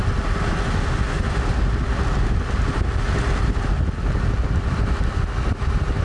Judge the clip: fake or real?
real